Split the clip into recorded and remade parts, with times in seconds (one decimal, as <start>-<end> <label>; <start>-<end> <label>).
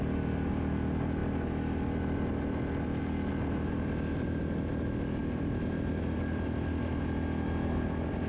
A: 0.0-8.3 recorded